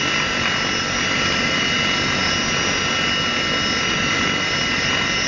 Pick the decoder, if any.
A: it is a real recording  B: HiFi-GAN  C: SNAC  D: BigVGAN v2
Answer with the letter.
A